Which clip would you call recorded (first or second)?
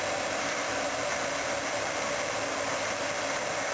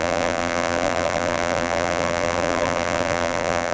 first